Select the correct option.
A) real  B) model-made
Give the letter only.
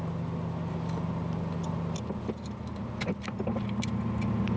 A